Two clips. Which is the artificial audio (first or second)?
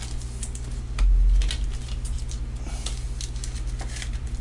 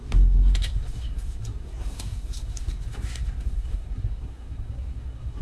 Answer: second